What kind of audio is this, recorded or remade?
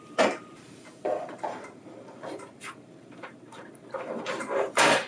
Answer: remade